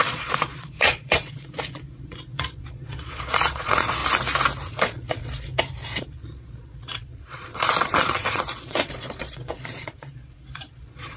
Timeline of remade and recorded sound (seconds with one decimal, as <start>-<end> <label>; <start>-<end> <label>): 0.0-4.0 remade; 4.0-4.7 recorded; 4.7-5.5 remade; 5.5-6.0 recorded; 6.0-11.2 remade